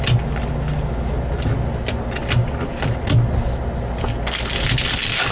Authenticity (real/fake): real